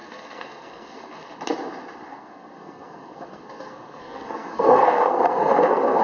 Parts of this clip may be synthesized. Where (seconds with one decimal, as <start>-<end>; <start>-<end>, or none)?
0.0-1.3; 2.1-6.0